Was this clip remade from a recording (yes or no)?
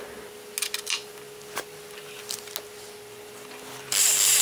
no